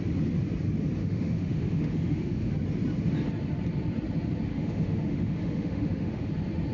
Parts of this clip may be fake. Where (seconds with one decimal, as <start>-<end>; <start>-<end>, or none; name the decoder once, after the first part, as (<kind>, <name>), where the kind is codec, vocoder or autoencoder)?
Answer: 1.0-2.5 (autoencoder, DAC-VAE); 4.5-6.3